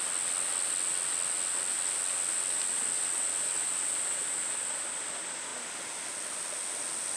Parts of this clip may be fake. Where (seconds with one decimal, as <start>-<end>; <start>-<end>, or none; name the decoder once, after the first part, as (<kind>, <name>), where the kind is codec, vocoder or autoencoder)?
none